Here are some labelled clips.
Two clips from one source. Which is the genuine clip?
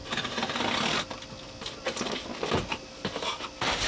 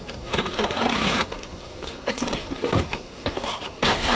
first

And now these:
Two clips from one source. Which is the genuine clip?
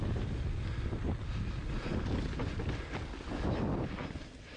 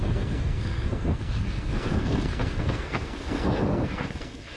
first